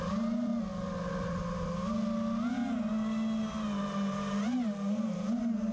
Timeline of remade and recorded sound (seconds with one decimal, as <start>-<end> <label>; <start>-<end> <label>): 0.0-0.5 remade; 0.5-3.8 recorded; 3.8-5.7 remade